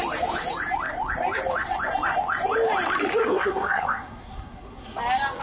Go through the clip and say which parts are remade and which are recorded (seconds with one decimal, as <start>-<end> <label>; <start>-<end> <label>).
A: 0.0-3.1 recorded; 3.1-5.0 remade; 5.0-5.4 recorded